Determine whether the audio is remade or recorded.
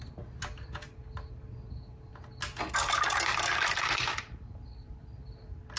recorded